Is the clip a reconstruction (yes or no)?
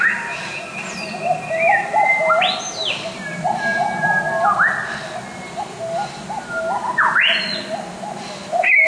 no